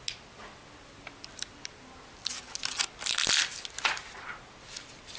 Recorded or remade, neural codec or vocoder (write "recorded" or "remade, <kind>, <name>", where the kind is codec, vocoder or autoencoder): recorded